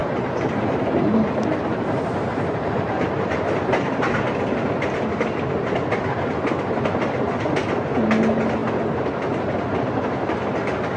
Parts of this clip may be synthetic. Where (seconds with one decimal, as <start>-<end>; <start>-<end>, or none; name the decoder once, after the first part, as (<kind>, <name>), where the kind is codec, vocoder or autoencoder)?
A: 0.0-4.1 (vocoder, BigVGAN v2)

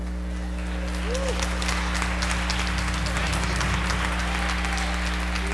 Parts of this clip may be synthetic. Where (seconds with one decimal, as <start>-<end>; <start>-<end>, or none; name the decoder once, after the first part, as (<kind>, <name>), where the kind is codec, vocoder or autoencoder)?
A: none

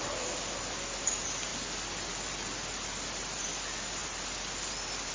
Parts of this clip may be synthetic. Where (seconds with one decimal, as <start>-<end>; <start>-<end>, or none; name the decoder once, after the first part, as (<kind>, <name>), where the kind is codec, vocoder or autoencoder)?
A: none

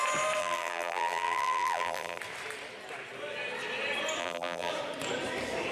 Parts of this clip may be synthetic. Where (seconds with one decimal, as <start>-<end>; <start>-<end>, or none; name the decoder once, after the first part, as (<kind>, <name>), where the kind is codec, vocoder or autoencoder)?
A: 0.4-2.2 (vocoder, BigVGAN v2); 4.2-4.7

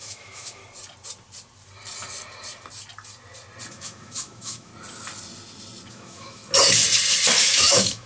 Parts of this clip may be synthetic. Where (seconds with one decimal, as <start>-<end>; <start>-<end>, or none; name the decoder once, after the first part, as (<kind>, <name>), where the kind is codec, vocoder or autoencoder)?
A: 0.0-0.6 (autoencoder, DAC-VAE); 3.7-4.7; 5.9-6.4; 7.4-8.1

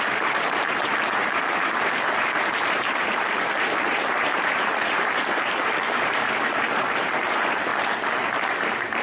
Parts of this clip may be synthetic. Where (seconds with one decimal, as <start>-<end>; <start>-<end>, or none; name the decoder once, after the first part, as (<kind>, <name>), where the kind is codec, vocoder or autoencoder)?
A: 0.0-7.7 (vocoder, BigVGAN v2); 8.6-9.0

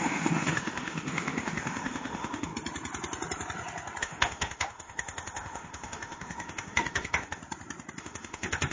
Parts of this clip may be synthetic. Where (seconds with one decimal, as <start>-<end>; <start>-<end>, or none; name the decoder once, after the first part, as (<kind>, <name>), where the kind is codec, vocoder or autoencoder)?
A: 0.0-2.5 (autoencoder, DAC-VAE); 4.0-7.4; 8.0-8.7